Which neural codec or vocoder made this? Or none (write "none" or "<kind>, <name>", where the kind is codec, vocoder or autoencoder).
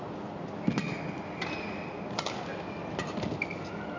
none